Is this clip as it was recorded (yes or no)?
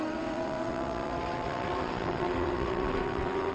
no